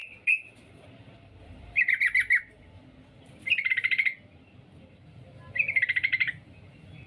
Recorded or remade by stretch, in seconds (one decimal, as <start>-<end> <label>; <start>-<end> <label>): 0.0-2.4 remade; 2.4-7.1 recorded